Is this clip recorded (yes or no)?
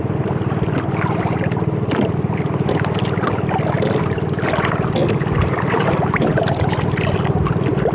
yes